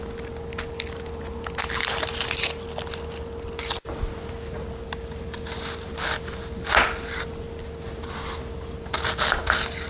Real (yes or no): yes